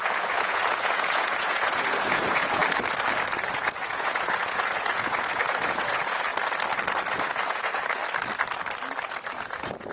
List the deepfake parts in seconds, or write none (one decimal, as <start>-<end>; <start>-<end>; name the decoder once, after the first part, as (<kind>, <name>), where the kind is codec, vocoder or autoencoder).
0.0-2.6 (vocoder, Vocos); 3.5-6.3; 7.1-8.0; 9.3-9.9